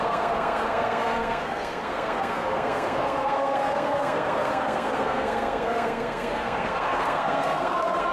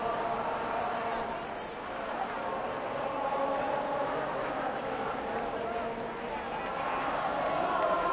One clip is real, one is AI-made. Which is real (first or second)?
second